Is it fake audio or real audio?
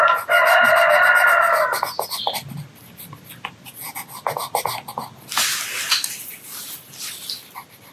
real